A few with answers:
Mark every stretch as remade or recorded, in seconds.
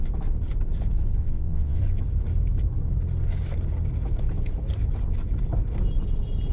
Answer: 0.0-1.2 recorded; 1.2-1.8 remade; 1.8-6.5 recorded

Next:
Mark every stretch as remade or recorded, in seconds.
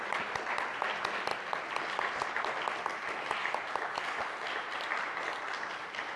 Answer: 0.0-6.2 recorded